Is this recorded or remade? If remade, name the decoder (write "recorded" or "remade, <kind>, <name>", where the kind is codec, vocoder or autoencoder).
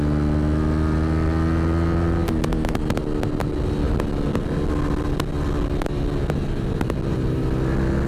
recorded